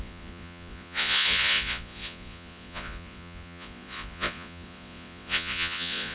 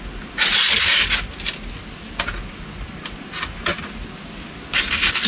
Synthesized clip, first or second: first